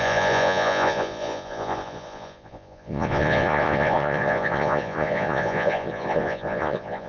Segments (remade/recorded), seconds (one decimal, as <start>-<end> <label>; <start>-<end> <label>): 0.0-7.1 remade